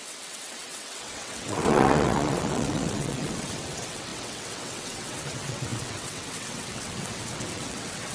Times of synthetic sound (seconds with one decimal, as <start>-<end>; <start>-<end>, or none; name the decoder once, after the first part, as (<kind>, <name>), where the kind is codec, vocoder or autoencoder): 0.0-8.1 (vocoder, WaveNeXt)